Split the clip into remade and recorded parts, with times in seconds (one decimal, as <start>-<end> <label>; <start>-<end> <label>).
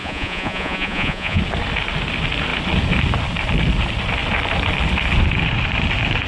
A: 0.0-1.4 remade; 1.4-6.3 recorded